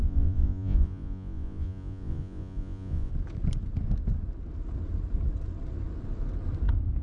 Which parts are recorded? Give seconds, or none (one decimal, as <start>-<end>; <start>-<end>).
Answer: 3.1-7.0